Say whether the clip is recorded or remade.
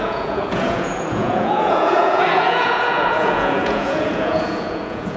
remade